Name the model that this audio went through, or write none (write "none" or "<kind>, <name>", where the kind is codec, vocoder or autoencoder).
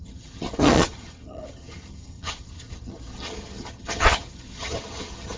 vocoder, HiFi-GAN